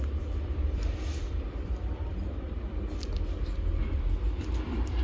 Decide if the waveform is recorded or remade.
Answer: remade